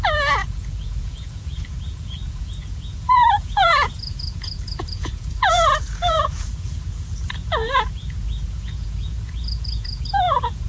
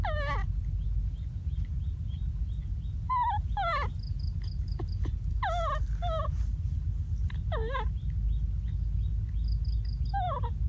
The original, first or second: second